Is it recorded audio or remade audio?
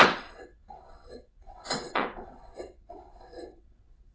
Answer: remade